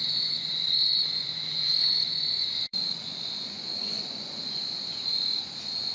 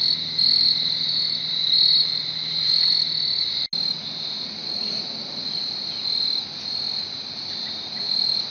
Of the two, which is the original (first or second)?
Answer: second